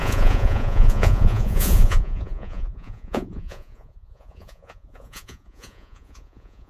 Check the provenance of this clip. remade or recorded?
remade